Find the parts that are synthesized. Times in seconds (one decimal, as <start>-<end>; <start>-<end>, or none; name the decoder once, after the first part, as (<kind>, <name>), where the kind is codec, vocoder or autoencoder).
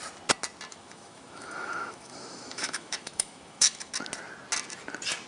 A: 0.7-3.9 (autoencoder, DAC-VAE)